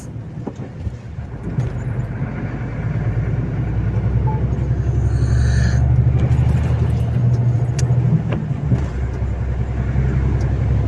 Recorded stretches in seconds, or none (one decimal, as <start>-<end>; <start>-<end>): 0.0-7.2; 7.8-10.9